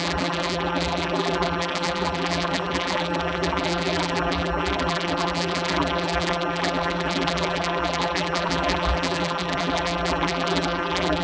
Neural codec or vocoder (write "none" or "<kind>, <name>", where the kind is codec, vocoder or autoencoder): vocoder, BigVGAN v2